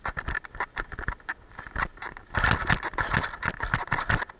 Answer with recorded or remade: recorded